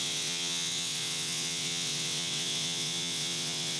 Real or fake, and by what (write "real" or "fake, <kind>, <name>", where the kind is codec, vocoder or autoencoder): fake, vocoder, WaveNeXt